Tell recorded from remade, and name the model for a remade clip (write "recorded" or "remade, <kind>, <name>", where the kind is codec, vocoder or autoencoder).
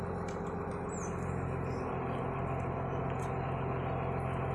recorded